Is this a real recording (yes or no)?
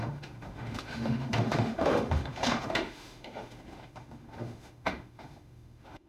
no